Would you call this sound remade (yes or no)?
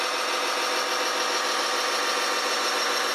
no